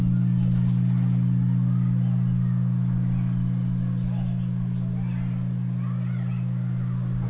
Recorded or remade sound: recorded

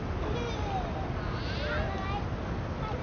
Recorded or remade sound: recorded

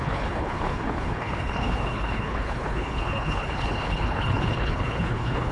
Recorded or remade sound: remade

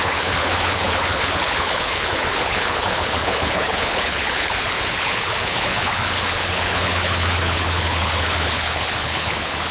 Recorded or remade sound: remade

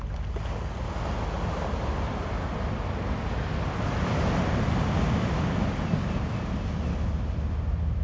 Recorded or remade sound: recorded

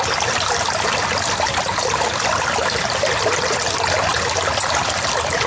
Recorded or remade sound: recorded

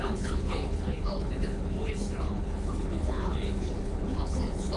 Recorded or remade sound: remade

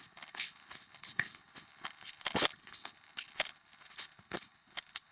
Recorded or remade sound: remade